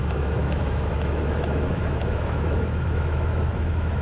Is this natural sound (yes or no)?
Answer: no